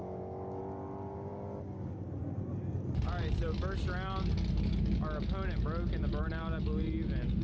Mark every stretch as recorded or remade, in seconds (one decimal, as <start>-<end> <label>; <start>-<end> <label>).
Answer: 0.0-0.6 remade; 0.6-7.4 recorded